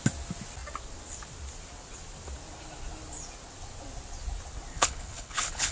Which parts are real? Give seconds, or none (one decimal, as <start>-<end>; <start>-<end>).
0.0-4.7